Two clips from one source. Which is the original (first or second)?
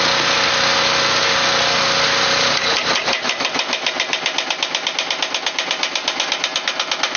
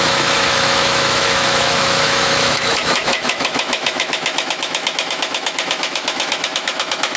first